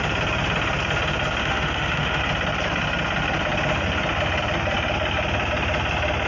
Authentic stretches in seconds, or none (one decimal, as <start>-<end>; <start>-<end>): 0.0-1.4; 2.2-6.3